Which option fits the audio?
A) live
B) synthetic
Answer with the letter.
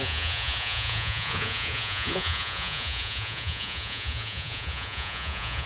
B